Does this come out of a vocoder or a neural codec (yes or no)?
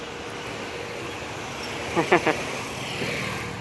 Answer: no